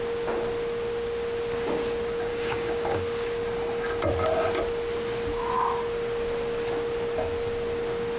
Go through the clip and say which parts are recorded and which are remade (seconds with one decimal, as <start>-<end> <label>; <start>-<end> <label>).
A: 0.0-2.3 recorded; 2.3-3.0 remade; 3.0-8.2 recorded